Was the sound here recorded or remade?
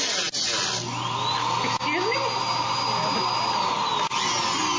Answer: recorded